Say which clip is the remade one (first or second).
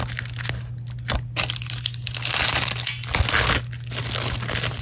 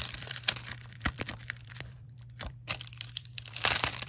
second